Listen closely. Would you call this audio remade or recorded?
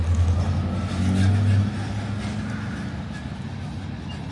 recorded